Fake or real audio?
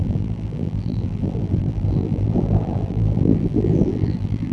fake